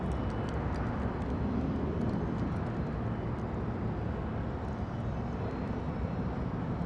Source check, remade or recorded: recorded